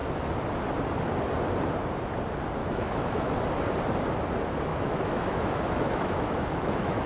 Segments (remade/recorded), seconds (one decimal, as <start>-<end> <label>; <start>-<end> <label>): 0.0-2.6 recorded; 2.6-3.3 remade; 3.3-4.7 recorded; 4.7-7.1 remade